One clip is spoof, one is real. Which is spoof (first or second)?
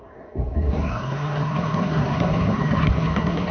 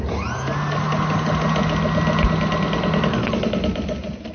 first